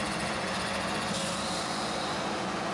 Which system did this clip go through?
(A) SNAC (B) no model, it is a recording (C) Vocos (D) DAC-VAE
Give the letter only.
C